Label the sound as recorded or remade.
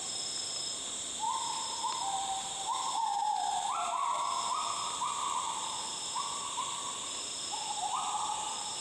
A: recorded